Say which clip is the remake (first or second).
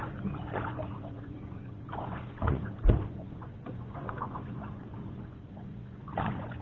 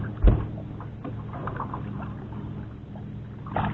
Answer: first